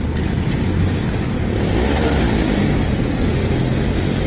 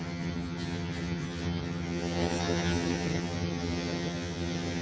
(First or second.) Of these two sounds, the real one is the first